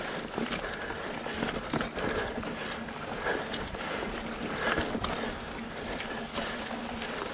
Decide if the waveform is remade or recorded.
recorded